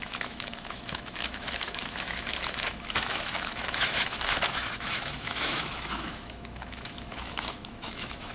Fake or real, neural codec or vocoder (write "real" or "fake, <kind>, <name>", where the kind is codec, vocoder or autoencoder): fake, autoencoder, DAC-VAE